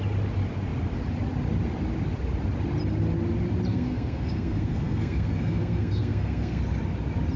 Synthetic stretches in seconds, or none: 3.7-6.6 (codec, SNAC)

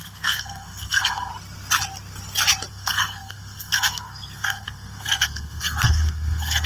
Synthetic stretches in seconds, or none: 0.0-1.3 (codec, SNAC); 2.7-6.7

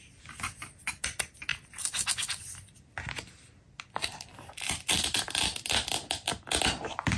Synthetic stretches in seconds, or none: none